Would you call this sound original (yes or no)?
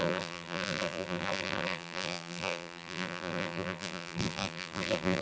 no